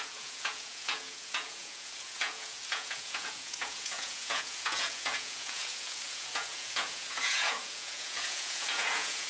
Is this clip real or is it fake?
fake